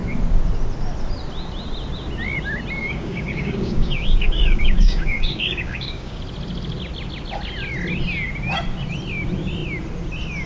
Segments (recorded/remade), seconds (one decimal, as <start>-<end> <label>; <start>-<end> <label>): 0.0-2.8 recorded; 2.8-6.2 remade; 6.2-10.5 recorded